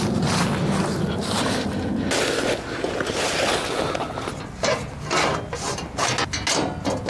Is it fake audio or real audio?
real